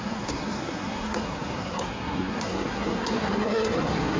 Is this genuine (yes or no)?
no